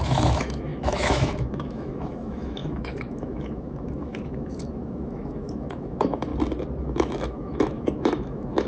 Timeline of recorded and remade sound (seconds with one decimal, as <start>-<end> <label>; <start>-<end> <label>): 0.0-6.3 remade; 6.3-6.8 recorded; 6.8-8.7 remade